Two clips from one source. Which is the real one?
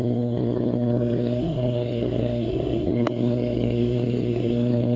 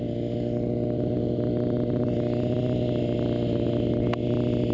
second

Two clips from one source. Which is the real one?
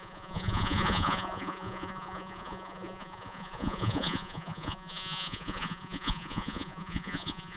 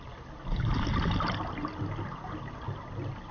second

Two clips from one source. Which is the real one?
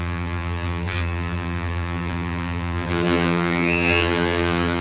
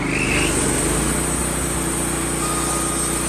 second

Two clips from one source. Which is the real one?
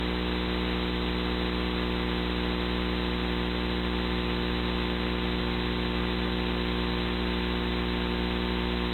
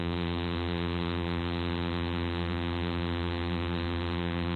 first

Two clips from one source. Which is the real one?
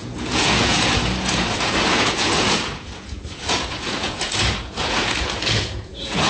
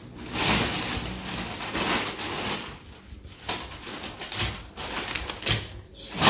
second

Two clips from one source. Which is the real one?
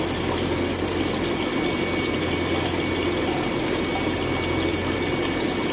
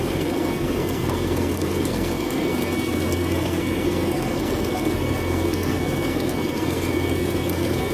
first